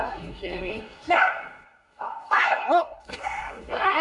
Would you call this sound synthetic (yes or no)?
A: yes